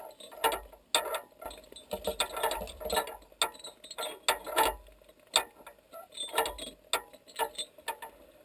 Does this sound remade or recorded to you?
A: recorded